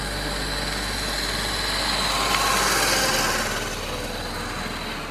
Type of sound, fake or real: real